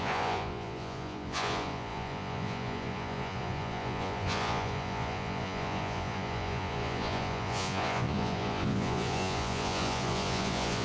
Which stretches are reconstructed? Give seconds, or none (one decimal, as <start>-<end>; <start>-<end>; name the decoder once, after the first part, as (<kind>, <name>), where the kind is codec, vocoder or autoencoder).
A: 0.0-10.8 (vocoder, Vocos)